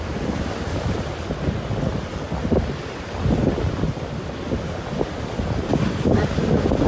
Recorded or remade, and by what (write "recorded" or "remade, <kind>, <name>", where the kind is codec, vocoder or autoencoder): recorded